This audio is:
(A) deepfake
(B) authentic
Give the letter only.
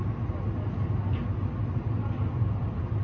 B